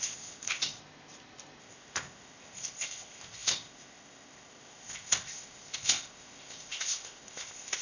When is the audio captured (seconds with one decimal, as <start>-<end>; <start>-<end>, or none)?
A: 0.8-1.6